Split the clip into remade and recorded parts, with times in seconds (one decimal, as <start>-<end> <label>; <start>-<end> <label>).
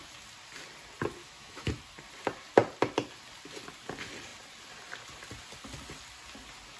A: 0.0-1.2 recorded; 1.2-1.7 remade; 1.7-6.8 recorded